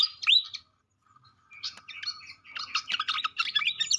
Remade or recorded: recorded